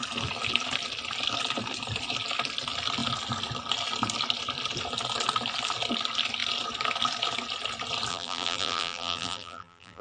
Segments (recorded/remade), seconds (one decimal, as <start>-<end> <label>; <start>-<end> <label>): 0.0-8.1 recorded; 8.1-10.0 remade